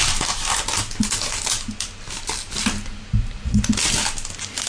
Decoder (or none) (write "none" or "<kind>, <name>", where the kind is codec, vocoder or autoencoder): none